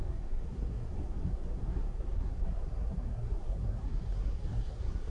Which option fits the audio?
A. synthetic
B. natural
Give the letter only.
A